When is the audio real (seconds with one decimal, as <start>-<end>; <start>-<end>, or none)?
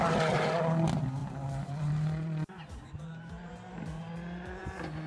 0.0-1.2; 3.5-5.1